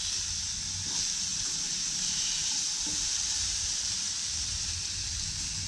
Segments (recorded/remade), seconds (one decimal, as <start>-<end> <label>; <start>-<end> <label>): 0.0-1.3 recorded; 1.3-4.7 remade; 4.7-5.7 recorded